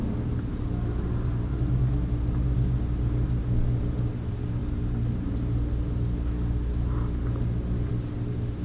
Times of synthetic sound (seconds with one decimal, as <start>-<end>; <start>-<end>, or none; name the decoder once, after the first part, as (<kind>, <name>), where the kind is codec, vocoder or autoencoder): 4.6-7.9 (vocoder, BigVGAN v2)

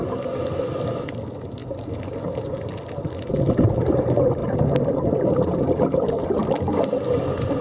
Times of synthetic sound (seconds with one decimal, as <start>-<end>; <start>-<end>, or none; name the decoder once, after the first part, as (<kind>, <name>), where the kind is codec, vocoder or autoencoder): none